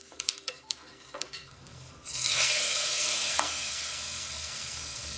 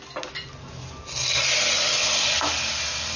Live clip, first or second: second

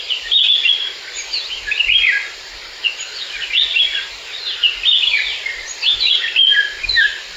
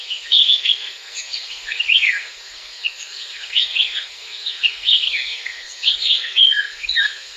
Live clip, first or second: first